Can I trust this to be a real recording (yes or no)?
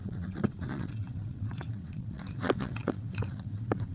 no